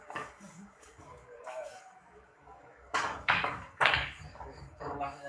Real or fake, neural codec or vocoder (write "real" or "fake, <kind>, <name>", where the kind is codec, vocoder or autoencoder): fake, codec, DAC